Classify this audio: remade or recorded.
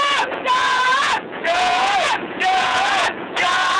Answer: remade